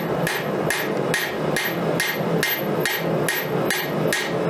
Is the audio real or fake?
real